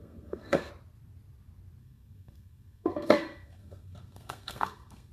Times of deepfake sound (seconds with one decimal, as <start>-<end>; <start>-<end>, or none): 0.0-0.7; 1.8-5.1